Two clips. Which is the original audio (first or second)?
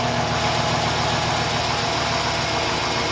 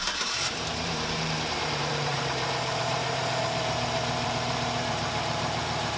first